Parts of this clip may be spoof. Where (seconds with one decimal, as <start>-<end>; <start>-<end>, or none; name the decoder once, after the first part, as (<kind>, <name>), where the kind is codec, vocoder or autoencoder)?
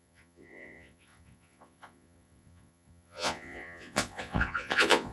0.0-5.1 (vocoder, Vocos)